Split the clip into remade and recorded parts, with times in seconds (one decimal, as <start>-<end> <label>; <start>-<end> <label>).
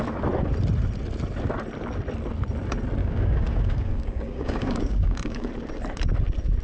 0.0-3.0 recorded; 3.0-5.5 remade; 5.5-6.6 recorded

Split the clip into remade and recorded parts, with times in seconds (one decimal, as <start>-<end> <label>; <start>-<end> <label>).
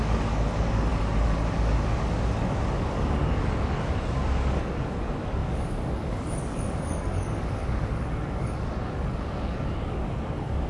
0.0-10.7 remade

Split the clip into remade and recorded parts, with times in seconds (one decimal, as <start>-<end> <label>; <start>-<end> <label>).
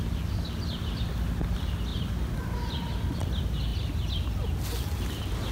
0.0-5.5 recorded